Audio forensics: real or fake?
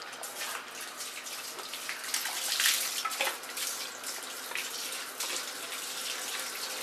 real